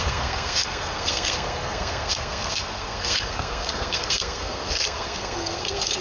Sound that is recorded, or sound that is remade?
remade